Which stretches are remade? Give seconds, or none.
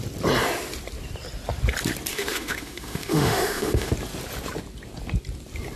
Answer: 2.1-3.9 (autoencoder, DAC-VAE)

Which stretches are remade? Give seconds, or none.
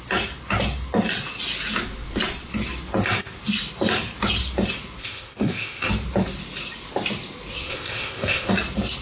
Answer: 5.0-5.9 (codec, ZipCodec); 7.7-8.5